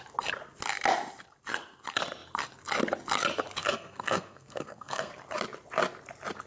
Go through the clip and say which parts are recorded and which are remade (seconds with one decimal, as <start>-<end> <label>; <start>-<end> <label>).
0.0-3.6 recorded; 3.6-5.1 remade; 5.1-6.5 recorded